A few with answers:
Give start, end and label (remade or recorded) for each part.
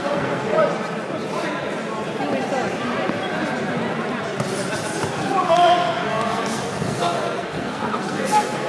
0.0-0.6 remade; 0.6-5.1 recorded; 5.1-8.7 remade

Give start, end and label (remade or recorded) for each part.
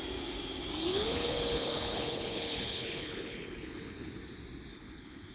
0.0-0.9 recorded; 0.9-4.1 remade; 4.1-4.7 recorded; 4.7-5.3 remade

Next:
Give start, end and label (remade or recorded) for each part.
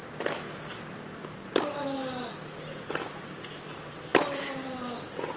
0.0-5.4 recorded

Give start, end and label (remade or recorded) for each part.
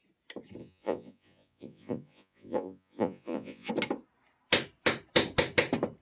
0.0-0.6 recorded; 0.6-3.7 remade; 3.7-6.0 recorded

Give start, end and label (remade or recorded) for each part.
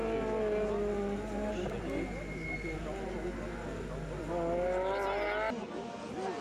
0.0-6.4 recorded